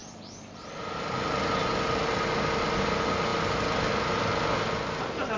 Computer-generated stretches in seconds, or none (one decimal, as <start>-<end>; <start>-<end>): none